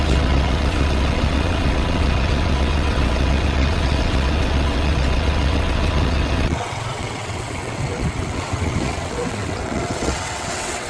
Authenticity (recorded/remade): remade